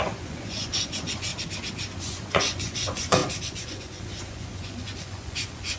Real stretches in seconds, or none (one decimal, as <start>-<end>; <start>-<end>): 1.3-2.0